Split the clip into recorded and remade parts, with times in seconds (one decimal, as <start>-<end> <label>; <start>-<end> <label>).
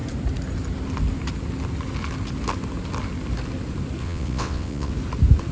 0.0-4.0 recorded; 4.0-4.9 remade; 4.9-5.5 recorded